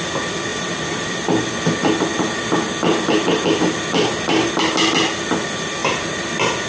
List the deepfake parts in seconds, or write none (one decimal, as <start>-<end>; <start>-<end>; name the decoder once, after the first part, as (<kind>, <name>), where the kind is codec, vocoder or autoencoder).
0.5-1.5 (vocoder, BigVGAN v2); 2.1-4.6; 5.8-6.3